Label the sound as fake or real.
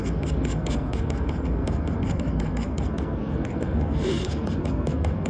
fake